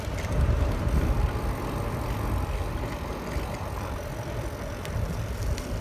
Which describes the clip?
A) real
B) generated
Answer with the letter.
A